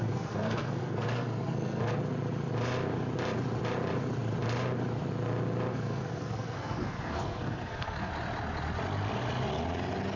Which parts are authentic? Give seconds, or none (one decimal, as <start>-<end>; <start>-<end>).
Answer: 1.8-5.7; 8.1-10.2